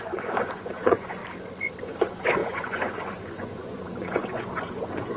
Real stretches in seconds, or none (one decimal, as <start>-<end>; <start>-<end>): 1.2-1.8